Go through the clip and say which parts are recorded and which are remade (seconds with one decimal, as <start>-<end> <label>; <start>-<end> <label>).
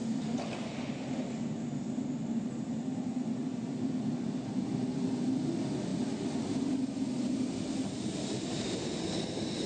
0.0-9.7 recorded